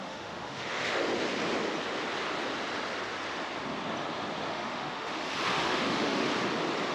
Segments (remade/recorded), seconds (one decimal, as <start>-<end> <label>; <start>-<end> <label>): 0.0-1.1 remade; 1.1-4.5 recorded; 4.5-6.3 remade; 6.3-6.9 recorded